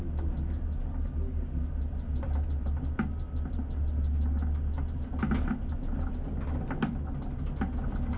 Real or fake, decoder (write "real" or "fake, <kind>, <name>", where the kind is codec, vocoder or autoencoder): real